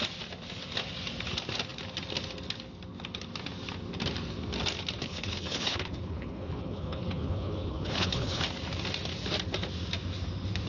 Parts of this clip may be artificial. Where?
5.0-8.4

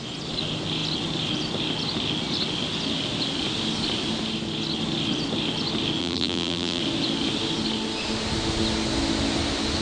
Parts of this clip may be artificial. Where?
6.0-6.8

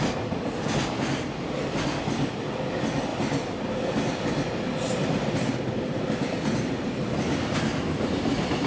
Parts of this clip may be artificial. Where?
none